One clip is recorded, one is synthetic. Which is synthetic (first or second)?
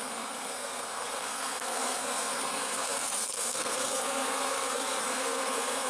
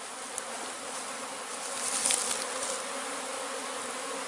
first